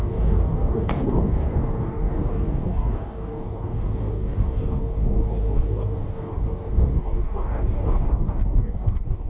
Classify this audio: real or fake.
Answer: fake